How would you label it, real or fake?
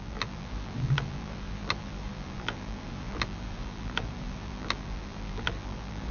fake